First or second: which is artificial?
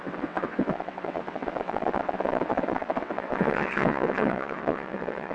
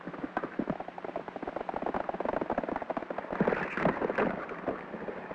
first